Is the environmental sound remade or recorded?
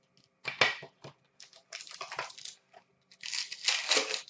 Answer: recorded